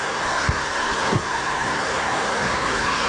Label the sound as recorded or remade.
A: remade